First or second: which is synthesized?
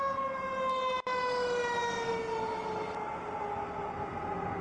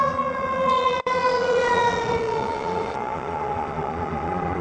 second